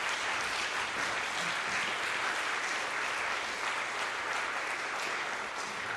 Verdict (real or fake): real